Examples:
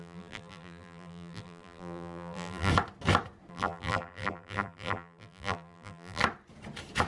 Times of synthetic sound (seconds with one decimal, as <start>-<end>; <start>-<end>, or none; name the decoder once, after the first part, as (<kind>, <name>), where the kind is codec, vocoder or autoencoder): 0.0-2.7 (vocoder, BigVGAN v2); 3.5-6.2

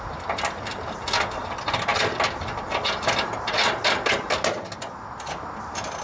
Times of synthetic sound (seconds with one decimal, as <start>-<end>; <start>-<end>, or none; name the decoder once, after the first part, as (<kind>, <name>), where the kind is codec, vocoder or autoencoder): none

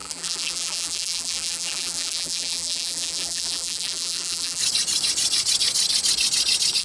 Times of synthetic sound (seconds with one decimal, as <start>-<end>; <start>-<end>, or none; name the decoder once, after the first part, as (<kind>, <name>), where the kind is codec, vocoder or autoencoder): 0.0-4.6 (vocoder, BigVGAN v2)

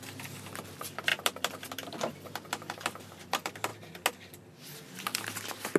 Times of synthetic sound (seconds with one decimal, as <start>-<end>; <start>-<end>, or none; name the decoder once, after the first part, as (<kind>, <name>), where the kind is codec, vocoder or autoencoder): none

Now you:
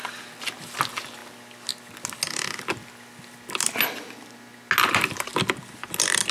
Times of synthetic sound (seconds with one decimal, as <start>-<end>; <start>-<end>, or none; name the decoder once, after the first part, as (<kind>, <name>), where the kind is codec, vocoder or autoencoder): none

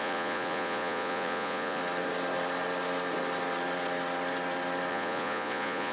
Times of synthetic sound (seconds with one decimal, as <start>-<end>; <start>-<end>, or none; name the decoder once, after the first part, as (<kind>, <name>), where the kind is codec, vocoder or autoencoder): 0.0-1.8 (vocoder, Vocos); 4.9-5.9

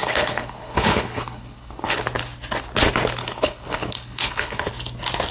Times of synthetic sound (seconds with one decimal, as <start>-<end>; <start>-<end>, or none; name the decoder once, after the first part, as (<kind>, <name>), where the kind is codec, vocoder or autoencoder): 0.0-2.0 (codec, HILCodec); 3.2-4.7

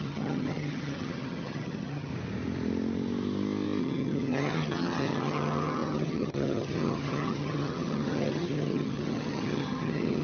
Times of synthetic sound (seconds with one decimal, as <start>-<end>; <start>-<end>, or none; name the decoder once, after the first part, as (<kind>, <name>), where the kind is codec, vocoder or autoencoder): 0.0-2.1 (vocoder, HiFi-GAN); 3.8-10.2